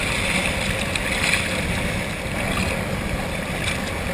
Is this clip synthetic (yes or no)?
no